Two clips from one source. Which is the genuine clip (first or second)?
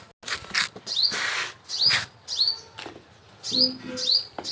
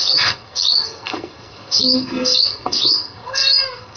first